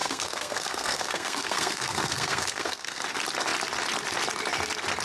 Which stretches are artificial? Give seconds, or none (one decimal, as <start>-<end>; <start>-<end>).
0.0-3.0